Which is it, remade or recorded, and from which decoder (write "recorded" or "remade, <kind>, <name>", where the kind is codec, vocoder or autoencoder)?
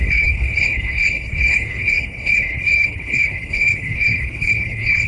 remade, codec, HILCodec